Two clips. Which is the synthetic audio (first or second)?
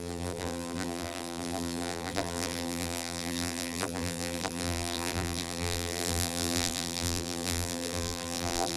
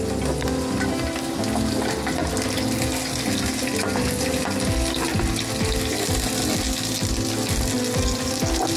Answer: first